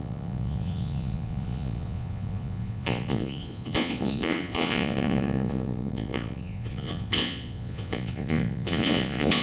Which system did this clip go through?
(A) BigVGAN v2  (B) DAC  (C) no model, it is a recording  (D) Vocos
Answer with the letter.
D